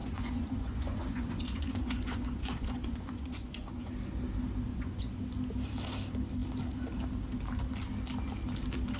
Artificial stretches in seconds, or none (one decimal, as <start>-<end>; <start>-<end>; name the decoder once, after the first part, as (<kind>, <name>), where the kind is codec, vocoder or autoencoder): 0.0-3.9 (vocoder, Vocos); 4.7-5.2